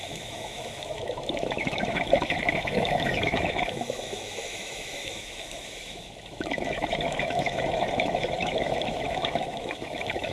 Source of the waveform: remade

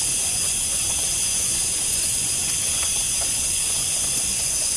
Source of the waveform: remade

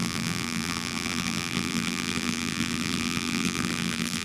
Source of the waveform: remade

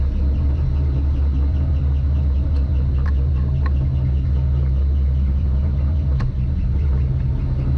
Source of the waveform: recorded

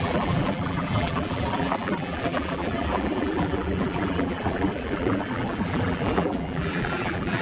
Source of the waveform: remade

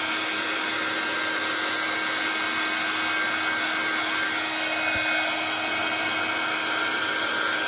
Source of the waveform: recorded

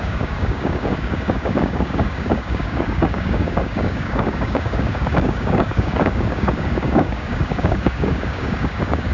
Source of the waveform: remade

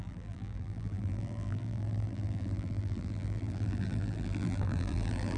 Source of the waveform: remade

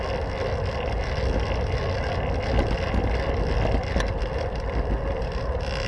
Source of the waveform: recorded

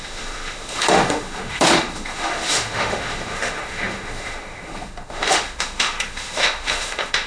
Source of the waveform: remade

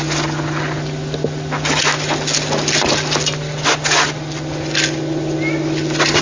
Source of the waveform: recorded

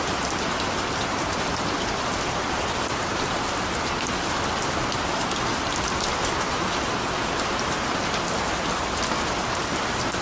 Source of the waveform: recorded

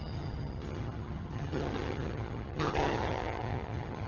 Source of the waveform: remade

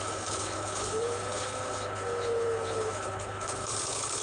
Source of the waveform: remade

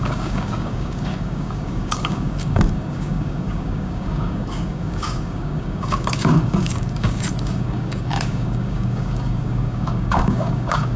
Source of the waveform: remade